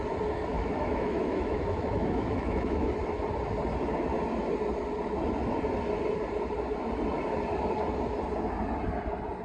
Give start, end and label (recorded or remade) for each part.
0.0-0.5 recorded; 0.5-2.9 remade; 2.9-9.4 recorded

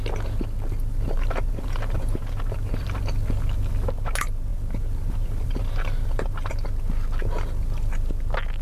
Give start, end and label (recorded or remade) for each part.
0.0-0.9 recorded; 0.9-2.8 remade; 2.8-4.5 recorded; 4.5-6.5 remade; 6.5-8.6 recorded

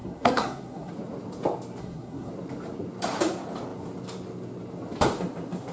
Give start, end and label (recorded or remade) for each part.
0.0-0.9 remade; 0.9-1.8 recorded; 1.8-2.3 remade; 2.3-5.7 recorded